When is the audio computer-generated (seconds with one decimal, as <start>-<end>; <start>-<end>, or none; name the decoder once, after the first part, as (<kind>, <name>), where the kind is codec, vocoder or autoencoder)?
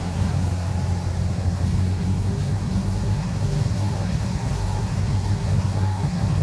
0.0-0.7 (codec, SNAC); 1.3-6.4